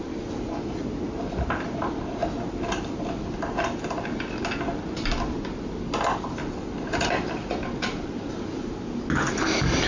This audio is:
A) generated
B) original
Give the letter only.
B